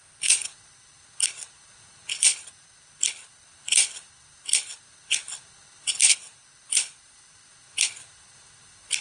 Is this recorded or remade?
remade